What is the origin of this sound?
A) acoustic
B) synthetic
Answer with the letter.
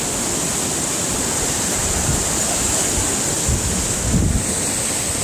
A